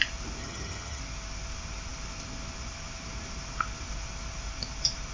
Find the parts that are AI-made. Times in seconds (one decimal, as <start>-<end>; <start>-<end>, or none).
0.4-1.0